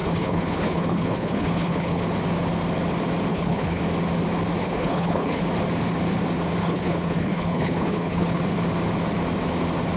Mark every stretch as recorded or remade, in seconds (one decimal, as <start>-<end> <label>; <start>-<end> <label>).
0.0-2.0 remade; 2.0-3.3 recorded; 3.3-3.8 remade; 3.8-4.6 recorded; 4.6-5.4 remade; 5.4-6.6 recorded; 6.6-8.4 remade; 8.4-10.0 recorded